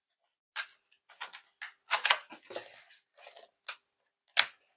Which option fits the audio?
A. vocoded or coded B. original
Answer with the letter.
B